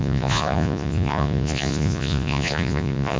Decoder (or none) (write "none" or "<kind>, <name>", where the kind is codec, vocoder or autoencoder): vocoder, Vocos